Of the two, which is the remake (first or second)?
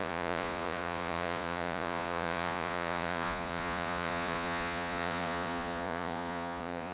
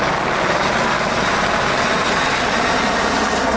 first